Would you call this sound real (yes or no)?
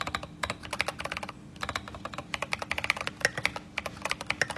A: yes